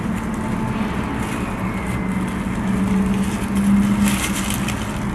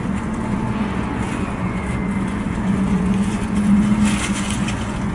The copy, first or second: second